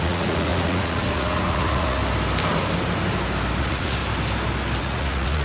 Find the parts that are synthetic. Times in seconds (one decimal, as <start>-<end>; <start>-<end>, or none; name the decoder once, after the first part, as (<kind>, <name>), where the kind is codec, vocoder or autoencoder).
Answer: 0.0-2.0 (vocoder, Vocos); 3.6-4.0; 4.8-5.4